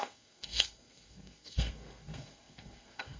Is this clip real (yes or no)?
no